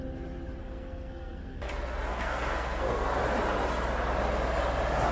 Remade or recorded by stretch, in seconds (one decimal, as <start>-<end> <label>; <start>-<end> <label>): 0.0-0.6 recorded; 0.6-1.7 remade; 1.7-2.1 recorded; 2.1-3.2 remade; 3.2-5.1 recorded

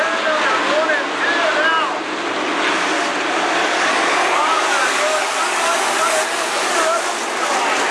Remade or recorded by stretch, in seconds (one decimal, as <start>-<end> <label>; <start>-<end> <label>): 0.0-3.6 recorded; 3.6-5.6 remade; 5.6-7.9 recorded

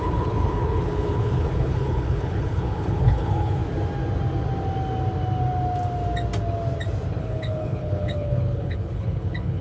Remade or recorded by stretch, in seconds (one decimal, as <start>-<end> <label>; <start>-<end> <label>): 0.0-3.6 remade; 3.6-7.2 recorded; 7.2-9.6 remade

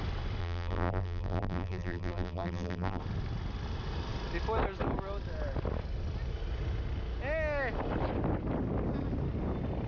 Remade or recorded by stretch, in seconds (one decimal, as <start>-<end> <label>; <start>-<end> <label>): 0.0-0.4 recorded; 0.4-3.0 remade; 3.0-9.9 recorded